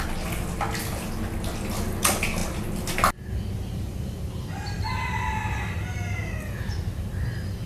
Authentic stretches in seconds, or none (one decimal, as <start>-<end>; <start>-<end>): 0.0-7.7